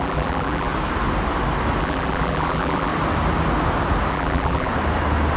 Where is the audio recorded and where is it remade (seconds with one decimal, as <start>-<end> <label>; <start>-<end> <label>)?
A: 0.0-0.7 remade; 0.7-1.8 recorded; 1.8-2.9 remade; 2.9-4.1 recorded; 4.1-4.7 remade; 4.7-5.4 recorded